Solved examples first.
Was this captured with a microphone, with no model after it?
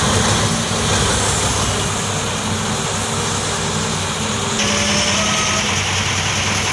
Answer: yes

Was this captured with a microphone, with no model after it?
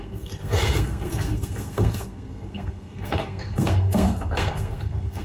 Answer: no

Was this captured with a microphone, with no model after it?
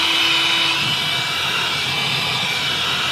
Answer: yes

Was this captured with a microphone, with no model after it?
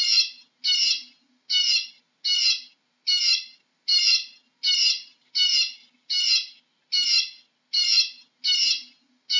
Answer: yes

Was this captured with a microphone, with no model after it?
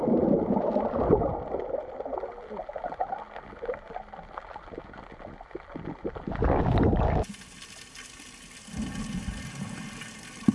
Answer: yes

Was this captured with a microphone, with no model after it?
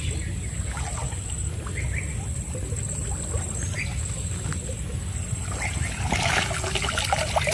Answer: yes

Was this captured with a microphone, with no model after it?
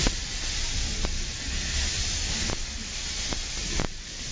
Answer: yes